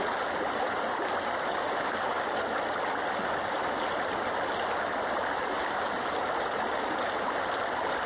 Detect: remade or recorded recorded